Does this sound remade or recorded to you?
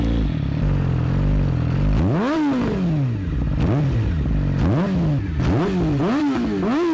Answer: recorded